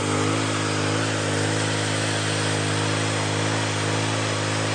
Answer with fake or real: real